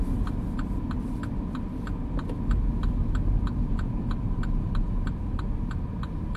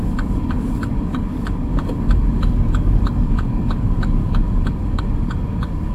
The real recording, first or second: first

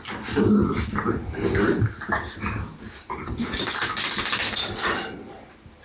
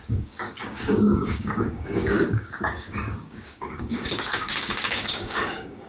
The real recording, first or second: first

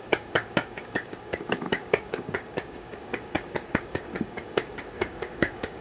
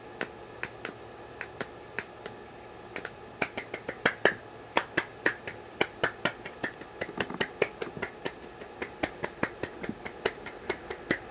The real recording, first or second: second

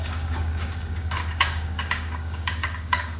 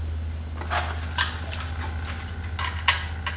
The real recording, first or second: second